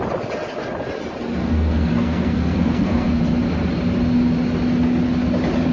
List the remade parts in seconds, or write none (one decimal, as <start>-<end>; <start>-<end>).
1.4-3.2